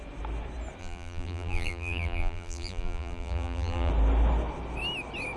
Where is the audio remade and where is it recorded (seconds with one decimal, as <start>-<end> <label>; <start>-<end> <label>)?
0.0-0.8 recorded; 0.8-3.9 remade; 3.9-5.4 recorded